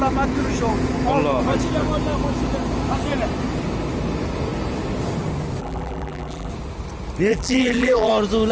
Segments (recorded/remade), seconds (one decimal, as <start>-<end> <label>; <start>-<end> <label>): 0.0-5.6 recorded; 5.6-6.5 remade; 6.5-7.3 recorded; 7.3-8.1 remade; 8.1-8.5 recorded